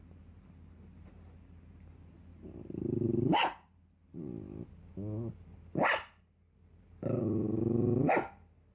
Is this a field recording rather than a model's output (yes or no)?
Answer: no